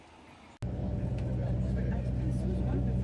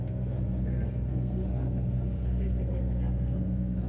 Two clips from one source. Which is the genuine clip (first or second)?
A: first